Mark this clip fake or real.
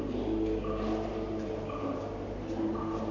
real